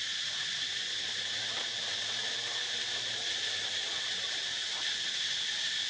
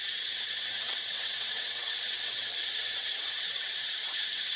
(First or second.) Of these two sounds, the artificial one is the second